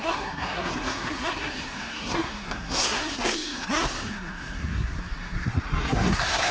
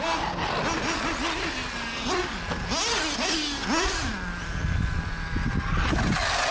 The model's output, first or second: first